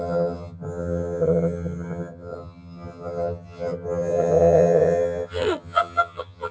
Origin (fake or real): fake